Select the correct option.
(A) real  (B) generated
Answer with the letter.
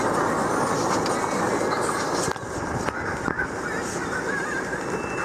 A